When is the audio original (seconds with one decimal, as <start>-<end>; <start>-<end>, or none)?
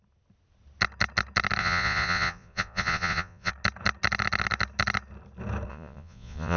0.0-1.6; 3.5-5.7